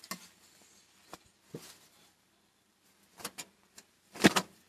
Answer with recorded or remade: recorded